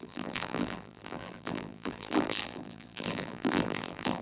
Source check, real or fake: fake